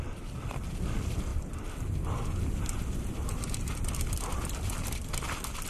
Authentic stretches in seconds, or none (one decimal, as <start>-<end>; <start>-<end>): none